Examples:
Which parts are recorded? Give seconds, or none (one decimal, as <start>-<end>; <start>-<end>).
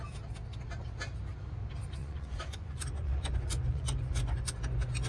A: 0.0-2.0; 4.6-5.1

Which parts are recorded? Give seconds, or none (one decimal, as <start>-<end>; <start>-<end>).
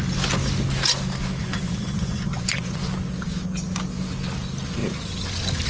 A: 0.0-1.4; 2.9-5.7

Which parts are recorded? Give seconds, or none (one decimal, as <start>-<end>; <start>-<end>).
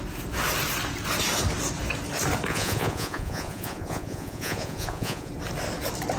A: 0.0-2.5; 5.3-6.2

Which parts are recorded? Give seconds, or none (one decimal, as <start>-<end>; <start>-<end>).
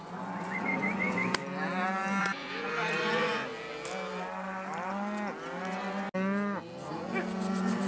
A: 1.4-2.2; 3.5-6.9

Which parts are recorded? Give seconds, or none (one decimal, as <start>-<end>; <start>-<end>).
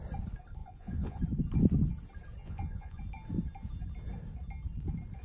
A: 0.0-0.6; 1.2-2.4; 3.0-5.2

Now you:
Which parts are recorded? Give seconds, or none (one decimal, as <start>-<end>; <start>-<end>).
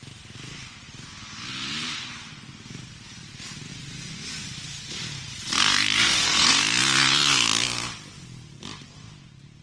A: 0.0-3.7; 4.5-6.0; 6.5-9.6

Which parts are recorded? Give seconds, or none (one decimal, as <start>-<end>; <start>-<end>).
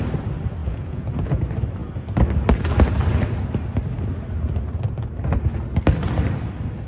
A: 0.0-0.6; 1.4-6.9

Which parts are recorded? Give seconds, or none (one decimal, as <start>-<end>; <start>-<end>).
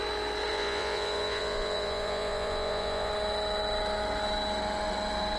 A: 0.0-0.5; 3.1-5.4